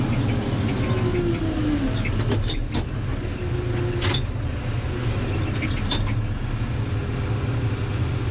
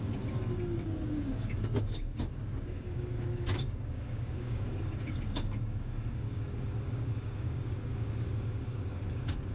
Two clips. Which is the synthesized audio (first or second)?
second